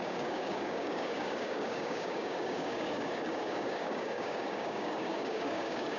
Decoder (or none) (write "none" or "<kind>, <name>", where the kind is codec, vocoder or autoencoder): codec, DAC